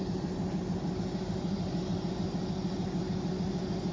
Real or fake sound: real